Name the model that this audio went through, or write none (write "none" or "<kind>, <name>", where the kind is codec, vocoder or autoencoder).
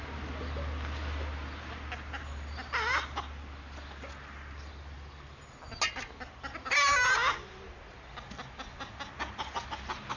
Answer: none